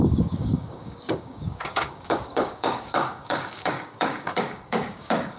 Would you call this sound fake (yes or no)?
yes